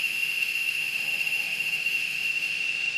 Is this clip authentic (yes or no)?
no